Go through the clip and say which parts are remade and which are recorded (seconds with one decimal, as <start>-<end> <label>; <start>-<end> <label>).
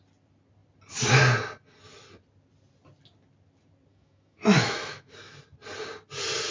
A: 0.0-3.9 recorded; 3.9-5.3 remade; 5.3-6.5 recorded